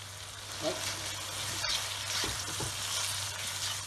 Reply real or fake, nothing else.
real